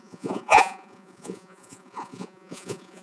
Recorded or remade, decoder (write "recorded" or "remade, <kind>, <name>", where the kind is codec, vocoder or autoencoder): remade, vocoder, Vocos